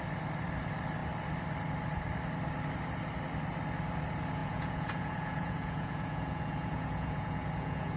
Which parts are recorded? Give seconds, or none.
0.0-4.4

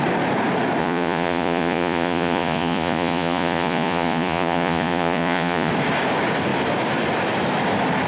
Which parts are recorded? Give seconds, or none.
0.0-0.8; 5.7-8.1